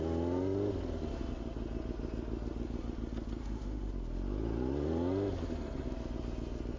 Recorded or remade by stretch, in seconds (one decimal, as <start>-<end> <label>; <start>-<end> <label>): 0.0-3.4 recorded; 3.4-3.9 remade; 3.9-6.8 recorded